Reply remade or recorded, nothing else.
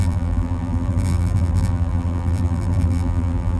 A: remade